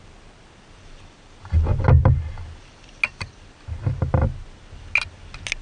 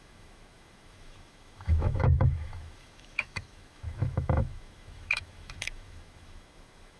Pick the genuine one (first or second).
first